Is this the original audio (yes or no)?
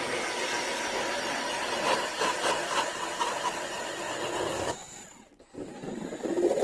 yes